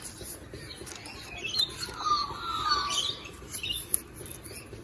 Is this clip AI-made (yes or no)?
no